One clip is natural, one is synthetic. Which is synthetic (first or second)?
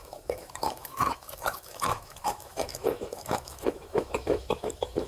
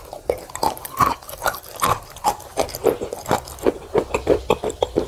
first